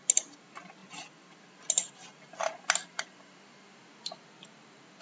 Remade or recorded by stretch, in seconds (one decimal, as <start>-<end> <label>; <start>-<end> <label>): 0.0-5.0 recorded